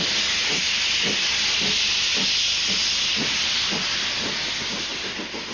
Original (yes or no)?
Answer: yes